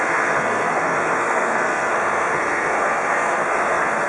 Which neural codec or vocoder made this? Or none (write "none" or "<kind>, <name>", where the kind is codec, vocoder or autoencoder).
codec, SNAC